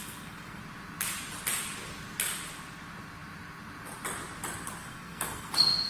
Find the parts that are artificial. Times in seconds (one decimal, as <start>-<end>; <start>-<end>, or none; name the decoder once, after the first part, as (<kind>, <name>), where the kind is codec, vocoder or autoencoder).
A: 0.0-0.6 (codec, SNAC); 4.8-5.5